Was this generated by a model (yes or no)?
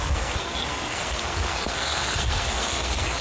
yes